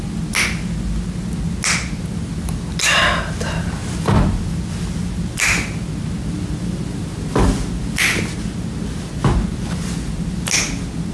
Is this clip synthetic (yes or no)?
no